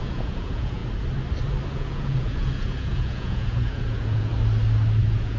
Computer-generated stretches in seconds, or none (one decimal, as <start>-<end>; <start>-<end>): 0.0-0.8; 1.7-4.3; 5.0-5.4